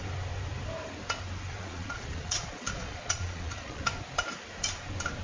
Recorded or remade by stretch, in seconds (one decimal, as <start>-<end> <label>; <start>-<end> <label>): 0.0-1.5 recorded; 1.5-3.8 remade; 3.8-5.2 recorded